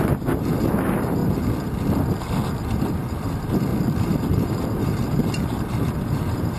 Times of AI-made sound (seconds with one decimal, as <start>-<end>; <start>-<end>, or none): 0.0-1.2; 2.9-3.7; 4.3-6.6